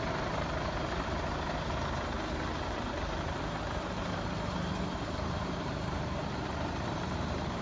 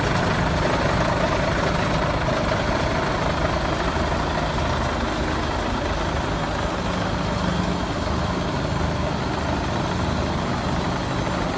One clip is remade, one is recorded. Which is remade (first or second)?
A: first